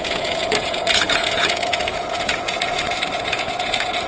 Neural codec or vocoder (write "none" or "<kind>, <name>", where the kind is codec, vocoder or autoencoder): vocoder, Vocos